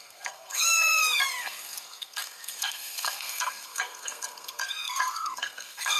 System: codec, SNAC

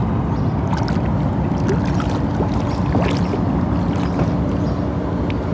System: none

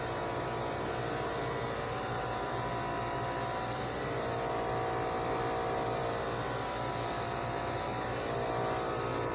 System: none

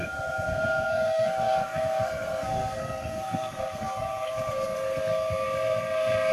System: codec, SNAC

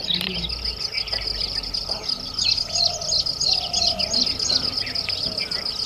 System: none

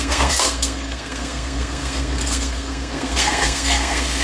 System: codec, SNAC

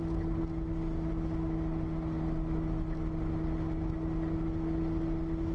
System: none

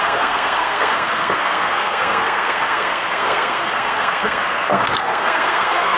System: codec, SNAC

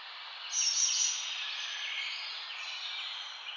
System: none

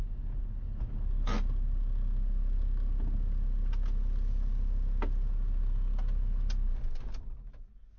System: none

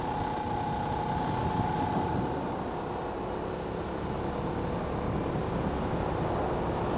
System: none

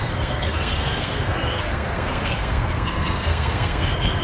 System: codec, SNAC